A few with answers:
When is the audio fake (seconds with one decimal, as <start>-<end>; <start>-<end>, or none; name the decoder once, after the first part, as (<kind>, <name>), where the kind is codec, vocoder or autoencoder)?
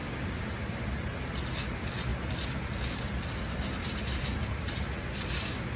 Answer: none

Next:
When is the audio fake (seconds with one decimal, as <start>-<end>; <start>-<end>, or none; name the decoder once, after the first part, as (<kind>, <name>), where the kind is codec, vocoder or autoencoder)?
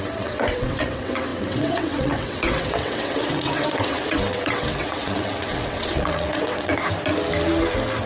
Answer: 0.0-6.7 (vocoder, WaveNeXt)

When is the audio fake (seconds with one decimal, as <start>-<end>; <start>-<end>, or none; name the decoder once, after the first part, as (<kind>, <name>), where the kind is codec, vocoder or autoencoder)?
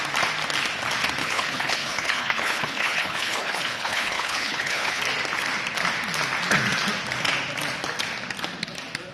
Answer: 1.2-5.0 (codec, HILCodec)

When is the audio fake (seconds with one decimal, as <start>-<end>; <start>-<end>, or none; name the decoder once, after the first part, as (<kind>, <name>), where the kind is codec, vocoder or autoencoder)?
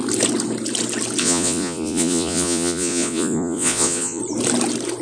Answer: 1.2-4.2 (vocoder, Vocos)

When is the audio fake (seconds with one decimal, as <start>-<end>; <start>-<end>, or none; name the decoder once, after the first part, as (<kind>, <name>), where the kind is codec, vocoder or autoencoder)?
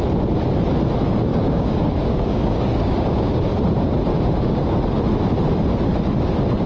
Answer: 1.3-3.5 (codec, DAC); 4.1-4.8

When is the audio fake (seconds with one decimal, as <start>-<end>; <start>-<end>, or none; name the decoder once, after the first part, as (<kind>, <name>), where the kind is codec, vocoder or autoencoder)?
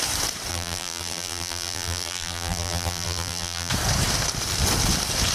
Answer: 0.5-3.7 (vocoder, BigVGAN v2)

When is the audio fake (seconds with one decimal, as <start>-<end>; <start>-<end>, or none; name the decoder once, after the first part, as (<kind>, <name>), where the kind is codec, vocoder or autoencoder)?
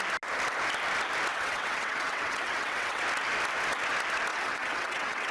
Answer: 1.3-3.0 (vocoder, WaveNeXt); 4.3-5.3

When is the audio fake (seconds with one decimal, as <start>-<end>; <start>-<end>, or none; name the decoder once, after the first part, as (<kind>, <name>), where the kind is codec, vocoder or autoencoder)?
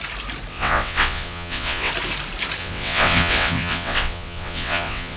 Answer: 0.5-1.9 (vocoder, WaveNeXt); 2.6-5.2